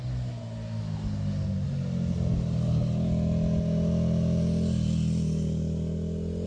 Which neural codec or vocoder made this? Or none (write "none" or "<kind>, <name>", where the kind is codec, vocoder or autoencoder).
none